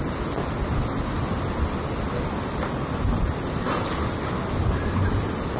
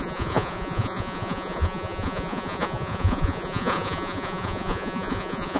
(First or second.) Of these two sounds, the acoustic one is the first